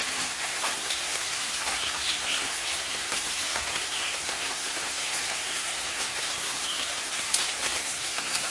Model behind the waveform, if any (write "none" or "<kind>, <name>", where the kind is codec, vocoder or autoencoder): codec, SNAC